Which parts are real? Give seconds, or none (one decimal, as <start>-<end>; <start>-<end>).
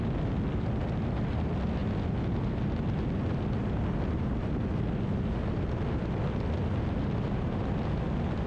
0.0-8.5